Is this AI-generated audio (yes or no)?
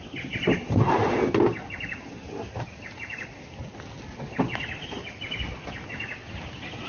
no